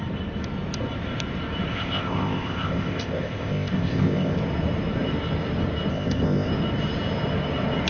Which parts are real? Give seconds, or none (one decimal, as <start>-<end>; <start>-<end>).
0.0-1.7; 4.4-5.9; 6.5-7.9